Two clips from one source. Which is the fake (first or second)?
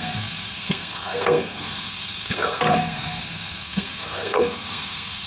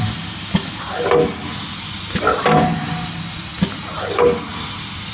first